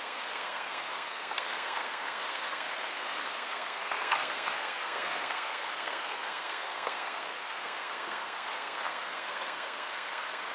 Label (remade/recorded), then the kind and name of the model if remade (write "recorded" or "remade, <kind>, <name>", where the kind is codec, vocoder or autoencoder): remade, codec, SNAC